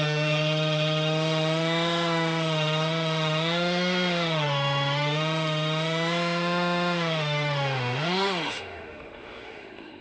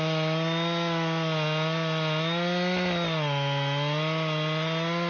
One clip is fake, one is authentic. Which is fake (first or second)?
first